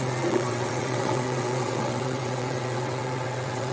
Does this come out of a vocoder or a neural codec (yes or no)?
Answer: yes